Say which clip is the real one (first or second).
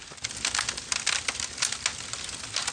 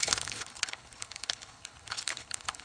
first